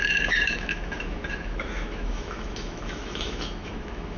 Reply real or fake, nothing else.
fake